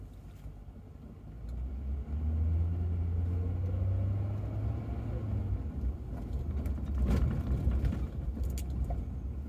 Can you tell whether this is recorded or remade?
recorded